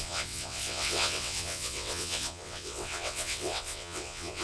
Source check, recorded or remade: remade